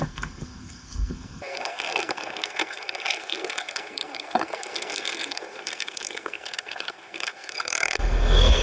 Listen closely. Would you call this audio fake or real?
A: fake